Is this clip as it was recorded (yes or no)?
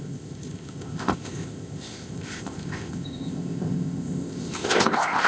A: no